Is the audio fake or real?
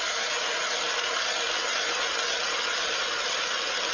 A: real